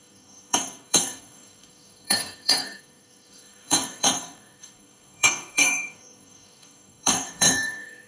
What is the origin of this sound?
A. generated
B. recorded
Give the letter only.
A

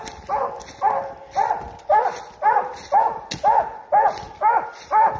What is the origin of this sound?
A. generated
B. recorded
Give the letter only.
B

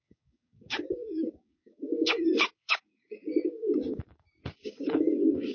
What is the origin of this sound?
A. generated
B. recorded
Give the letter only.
A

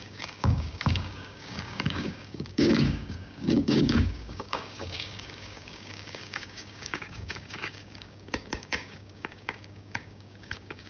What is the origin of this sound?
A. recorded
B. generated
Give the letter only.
B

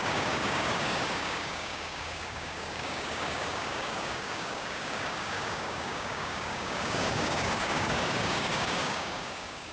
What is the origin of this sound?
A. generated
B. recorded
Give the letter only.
A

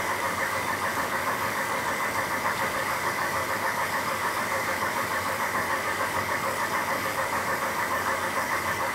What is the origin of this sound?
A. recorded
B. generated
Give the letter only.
B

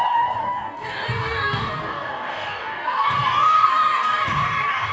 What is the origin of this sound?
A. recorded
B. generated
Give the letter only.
B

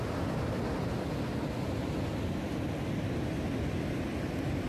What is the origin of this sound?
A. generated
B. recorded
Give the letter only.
B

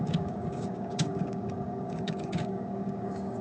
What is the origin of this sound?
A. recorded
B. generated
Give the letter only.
B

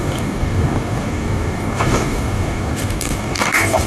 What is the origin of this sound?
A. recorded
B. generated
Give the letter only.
B